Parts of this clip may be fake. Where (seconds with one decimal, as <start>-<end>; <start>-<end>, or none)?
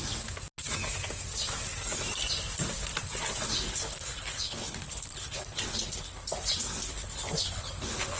3.5-6.3; 6.8-8.2